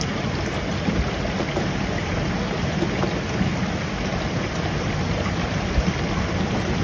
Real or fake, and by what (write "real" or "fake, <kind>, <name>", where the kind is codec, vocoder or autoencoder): real